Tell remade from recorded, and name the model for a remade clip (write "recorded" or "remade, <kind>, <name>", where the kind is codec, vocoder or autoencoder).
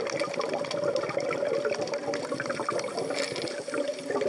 recorded